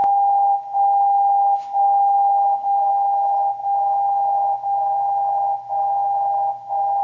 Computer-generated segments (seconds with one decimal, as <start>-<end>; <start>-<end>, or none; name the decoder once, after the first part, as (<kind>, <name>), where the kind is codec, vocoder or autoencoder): none